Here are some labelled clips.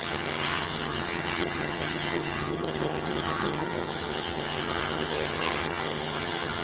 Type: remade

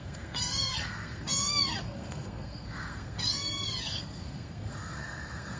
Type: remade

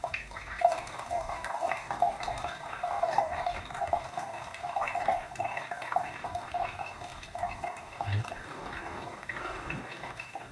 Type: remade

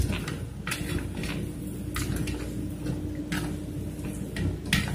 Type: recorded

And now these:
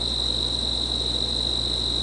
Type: recorded